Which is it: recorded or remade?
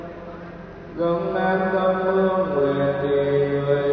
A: recorded